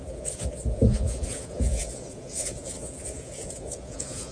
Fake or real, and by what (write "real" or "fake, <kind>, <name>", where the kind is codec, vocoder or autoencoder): fake, vocoder, Vocos